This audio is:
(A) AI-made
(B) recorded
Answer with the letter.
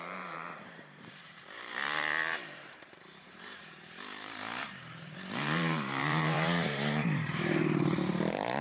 A